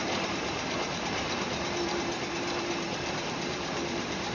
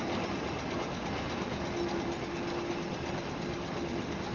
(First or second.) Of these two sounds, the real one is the second